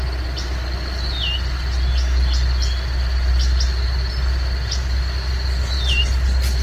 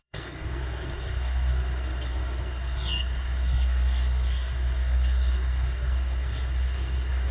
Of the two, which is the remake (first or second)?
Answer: second